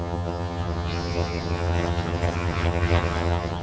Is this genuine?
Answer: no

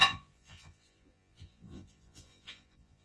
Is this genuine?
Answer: no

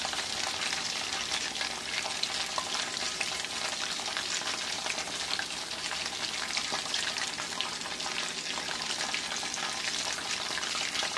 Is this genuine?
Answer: yes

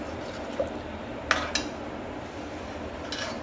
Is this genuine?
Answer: yes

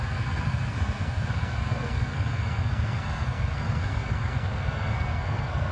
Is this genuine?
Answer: no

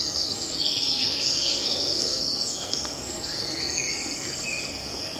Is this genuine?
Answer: no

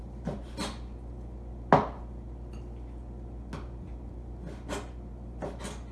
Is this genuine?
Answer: yes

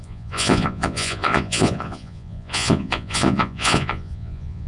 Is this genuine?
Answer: no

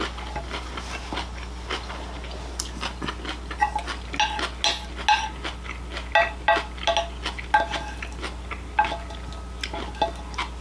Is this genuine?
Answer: yes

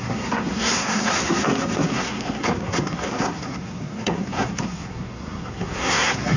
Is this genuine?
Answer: no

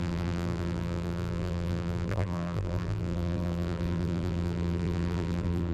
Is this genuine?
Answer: no